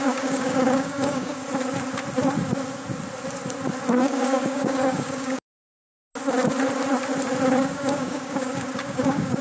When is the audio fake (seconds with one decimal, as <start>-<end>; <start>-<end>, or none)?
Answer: 0.0-1.4; 4.0-6.0; 7.5-9.4